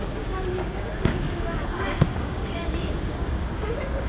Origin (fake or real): fake